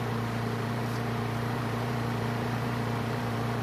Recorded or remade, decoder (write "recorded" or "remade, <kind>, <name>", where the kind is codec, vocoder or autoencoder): remade, vocoder, BigVGAN v2